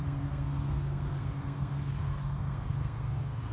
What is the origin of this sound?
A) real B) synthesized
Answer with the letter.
B